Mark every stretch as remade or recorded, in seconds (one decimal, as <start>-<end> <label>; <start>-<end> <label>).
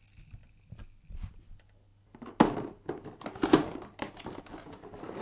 0.0-5.2 recorded